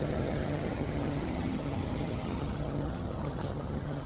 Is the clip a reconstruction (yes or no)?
yes